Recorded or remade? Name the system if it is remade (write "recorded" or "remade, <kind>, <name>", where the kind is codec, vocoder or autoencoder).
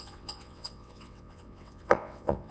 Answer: remade, vocoder, WaveNeXt